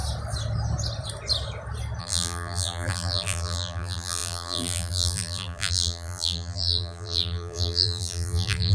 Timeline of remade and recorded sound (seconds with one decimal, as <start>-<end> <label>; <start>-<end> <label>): 0.0-2.0 recorded; 2.0-8.7 remade